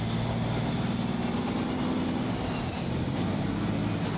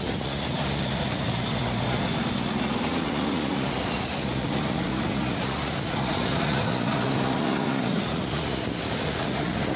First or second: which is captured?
first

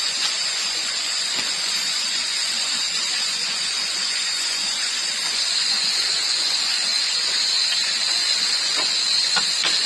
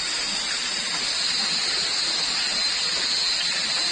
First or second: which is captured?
second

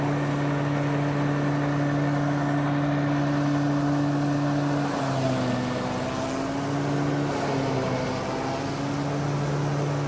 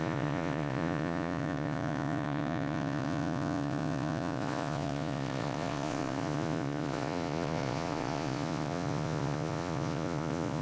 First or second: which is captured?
first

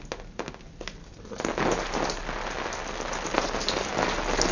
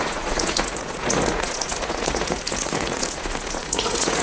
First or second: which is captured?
first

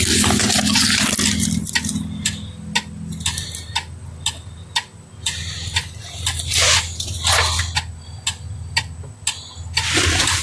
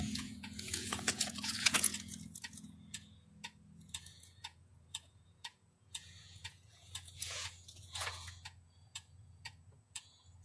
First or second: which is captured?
first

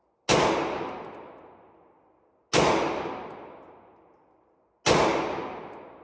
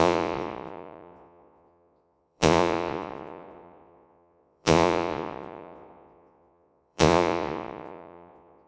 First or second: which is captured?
first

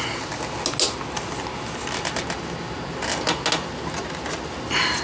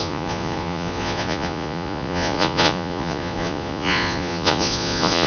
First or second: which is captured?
first